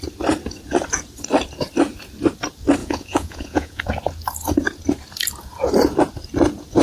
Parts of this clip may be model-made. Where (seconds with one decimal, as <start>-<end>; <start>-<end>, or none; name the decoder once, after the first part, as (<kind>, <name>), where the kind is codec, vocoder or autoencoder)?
2.8-3.8 (vocoder, Vocos)